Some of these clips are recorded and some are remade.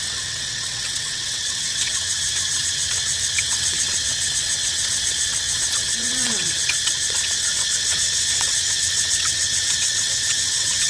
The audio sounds remade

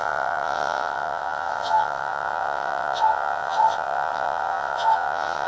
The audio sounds remade